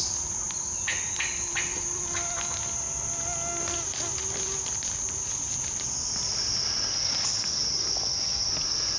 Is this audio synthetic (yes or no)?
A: no